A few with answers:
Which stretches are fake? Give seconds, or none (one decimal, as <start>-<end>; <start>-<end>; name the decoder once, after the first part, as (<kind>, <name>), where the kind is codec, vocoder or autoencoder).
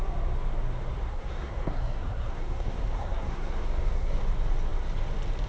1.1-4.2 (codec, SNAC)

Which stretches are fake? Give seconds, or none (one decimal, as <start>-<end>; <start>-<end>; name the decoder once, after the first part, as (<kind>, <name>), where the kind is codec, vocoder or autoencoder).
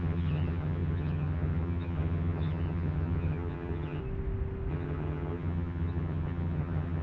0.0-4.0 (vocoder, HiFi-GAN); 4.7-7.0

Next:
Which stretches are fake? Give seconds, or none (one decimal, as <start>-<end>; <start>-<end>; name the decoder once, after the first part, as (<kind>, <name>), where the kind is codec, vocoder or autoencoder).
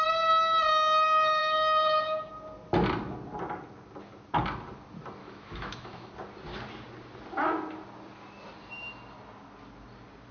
1.4-2.3 (autoencoder, DAC-VAE); 5.2-6.1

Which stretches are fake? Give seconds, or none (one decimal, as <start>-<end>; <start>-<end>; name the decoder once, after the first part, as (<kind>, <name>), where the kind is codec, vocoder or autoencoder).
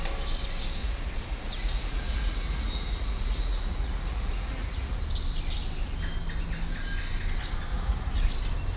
0.8-5.0 (vocoder, Vocos); 7.7-8.3